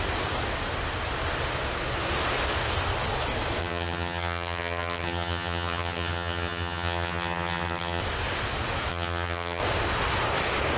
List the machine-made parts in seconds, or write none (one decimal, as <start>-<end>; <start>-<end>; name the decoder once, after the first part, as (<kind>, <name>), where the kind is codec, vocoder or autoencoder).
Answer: 3.6-8.0 (vocoder, HiFi-GAN); 8.9-9.6